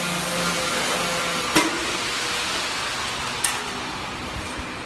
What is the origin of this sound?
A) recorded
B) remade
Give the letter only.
A